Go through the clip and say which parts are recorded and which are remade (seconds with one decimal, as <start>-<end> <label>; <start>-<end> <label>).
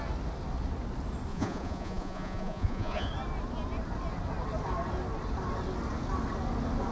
0.0-1.3 recorded; 1.3-3.1 remade; 3.1-6.9 recorded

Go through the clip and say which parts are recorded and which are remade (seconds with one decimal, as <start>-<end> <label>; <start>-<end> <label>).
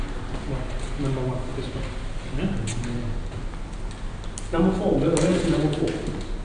0.0-5.3 recorded; 5.3-5.8 remade; 5.8-6.4 recorded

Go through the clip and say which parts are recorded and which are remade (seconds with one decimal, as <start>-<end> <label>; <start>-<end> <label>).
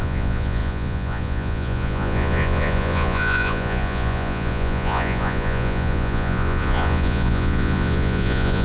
0.0-8.6 remade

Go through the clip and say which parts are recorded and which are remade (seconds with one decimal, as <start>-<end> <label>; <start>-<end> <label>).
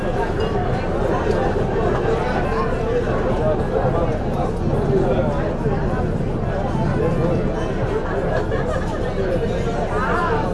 0.0-10.5 recorded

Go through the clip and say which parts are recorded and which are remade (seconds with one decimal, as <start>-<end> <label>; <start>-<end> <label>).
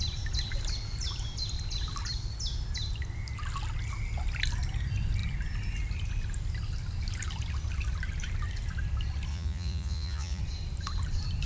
0.0-9.3 recorded; 9.3-10.4 remade; 10.4-11.5 recorded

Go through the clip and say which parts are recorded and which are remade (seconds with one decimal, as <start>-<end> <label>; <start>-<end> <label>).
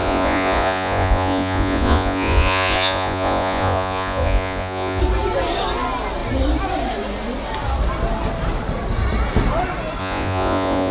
0.0-5.0 remade; 5.0-10.0 recorded; 10.0-10.9 remade